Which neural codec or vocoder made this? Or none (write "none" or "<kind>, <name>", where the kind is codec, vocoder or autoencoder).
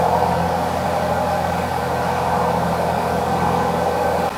codec, DAC